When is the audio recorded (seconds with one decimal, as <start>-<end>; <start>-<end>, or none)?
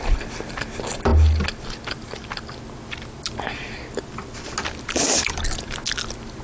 0.0-6.4